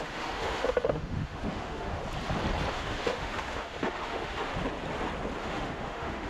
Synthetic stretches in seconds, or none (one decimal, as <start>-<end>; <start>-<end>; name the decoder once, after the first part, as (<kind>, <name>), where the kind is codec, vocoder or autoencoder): 0.0-2.0 (autoencoder, DAC-VAE); 2.7-4.5; 5.4-6.3